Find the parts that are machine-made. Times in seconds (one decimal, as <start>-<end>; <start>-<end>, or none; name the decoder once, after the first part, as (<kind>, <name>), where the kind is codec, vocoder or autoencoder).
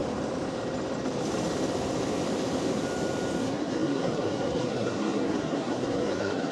3.4-6.5 (codec, SNAC)